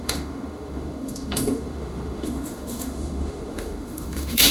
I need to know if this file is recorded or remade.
remade